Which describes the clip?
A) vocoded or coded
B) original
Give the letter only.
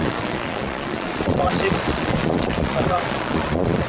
A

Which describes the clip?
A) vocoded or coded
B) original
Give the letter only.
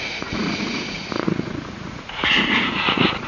A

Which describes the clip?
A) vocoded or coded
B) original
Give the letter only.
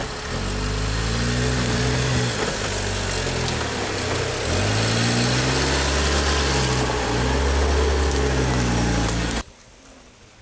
B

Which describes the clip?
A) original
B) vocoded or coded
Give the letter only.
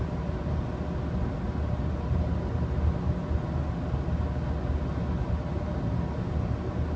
A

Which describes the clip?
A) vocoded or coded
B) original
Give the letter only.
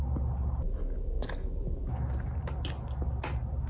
B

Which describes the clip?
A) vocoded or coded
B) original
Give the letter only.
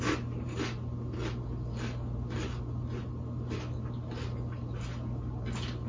B